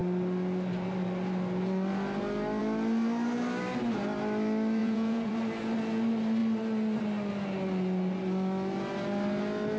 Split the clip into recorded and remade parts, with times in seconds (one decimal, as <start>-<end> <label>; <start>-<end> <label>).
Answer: 0.0-4.8 recorded; 4.8-5.3 remade; 5.3-9.8 recorded